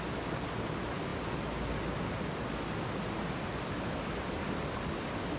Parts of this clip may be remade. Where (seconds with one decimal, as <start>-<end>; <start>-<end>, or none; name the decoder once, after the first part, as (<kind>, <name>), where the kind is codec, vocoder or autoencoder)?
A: none